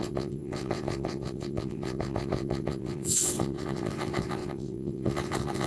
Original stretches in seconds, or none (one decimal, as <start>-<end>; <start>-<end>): none